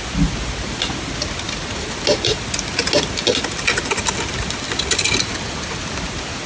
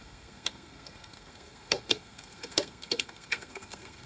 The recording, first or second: first